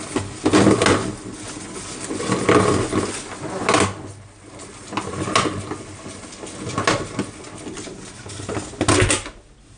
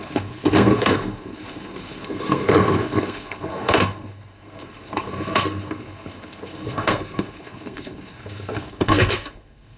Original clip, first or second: first